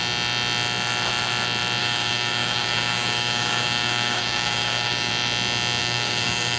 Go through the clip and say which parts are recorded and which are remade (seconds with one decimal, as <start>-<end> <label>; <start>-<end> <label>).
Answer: 0.0-1.8 recorded; 1.8-5.1 remade; 5.1-5.8 recorded; 5.8-6.6 remade